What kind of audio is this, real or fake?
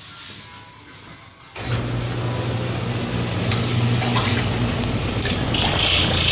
real